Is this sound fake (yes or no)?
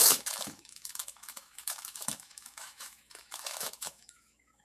yes